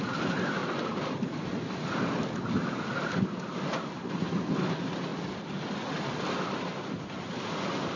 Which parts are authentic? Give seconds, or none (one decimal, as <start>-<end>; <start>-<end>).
0.0-8.0